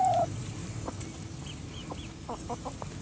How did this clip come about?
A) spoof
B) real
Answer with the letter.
B